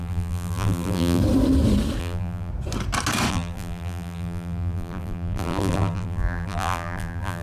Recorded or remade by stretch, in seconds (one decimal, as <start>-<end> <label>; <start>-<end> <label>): 0.0-1.2 remade; 1.2-2.0 recorded; 2.0-2.5 remade; 2.5-3.3 recorded; 3.3-7.4 remade